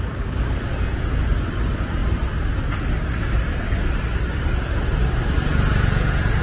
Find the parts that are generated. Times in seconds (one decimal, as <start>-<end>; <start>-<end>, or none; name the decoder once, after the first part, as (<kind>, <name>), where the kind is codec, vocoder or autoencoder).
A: 0.7-1.3 (vocoder, Vocos); 5.5-6.4